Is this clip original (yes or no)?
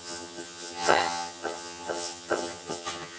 no